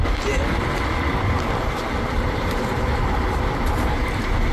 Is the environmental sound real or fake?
real